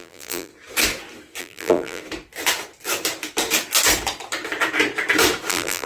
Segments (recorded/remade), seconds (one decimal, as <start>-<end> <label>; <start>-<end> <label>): 0.0-0.5 remade; 0.5-1.4 recorded; 1.4-2.0 remade; 2.0-5.5 recorded; 5.5-5.9 remade